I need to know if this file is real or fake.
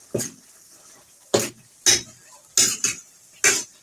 real